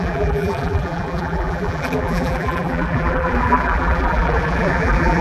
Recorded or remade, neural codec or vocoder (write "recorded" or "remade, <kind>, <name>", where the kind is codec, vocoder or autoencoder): remade, vocoder, BigVGAN v2